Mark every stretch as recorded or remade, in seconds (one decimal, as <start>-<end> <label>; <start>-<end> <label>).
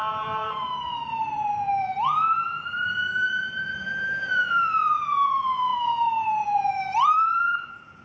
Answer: 0.0-8.0 remade